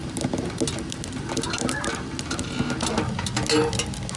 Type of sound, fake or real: real